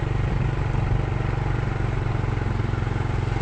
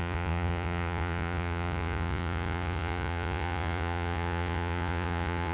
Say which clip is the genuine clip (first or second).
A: first